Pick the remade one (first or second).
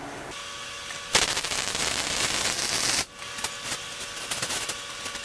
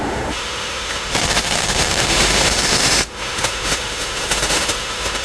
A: second